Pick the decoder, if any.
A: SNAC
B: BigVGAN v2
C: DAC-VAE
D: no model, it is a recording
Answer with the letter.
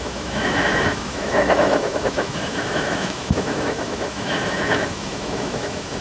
C